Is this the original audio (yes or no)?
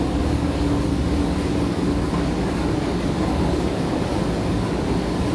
no